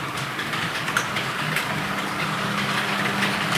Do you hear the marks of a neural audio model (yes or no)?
yes